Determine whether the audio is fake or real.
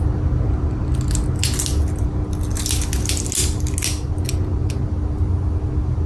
real